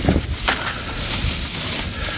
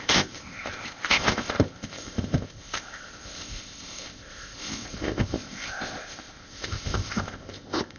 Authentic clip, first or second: first